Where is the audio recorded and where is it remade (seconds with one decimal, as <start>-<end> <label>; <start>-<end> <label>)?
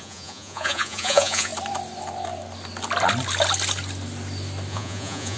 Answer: 0.0-1.5 remade; 1.5-4.7 recorded; 4.7-5.4 remade